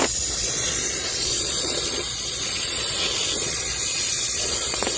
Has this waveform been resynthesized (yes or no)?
yes